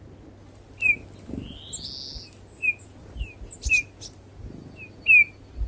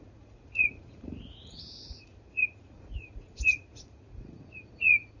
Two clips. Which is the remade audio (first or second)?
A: second